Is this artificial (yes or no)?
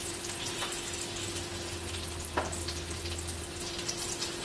no